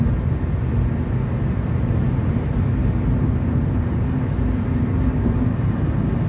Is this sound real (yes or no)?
yes